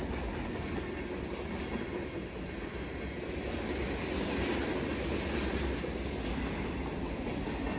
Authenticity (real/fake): real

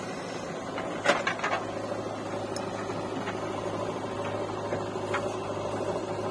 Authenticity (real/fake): real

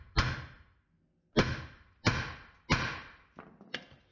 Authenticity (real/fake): real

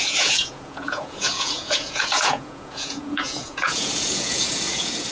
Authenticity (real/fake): fake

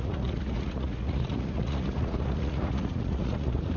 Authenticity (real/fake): fake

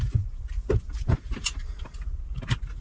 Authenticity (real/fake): real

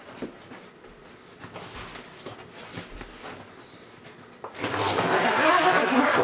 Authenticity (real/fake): real